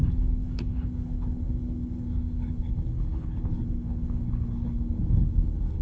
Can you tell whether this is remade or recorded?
remade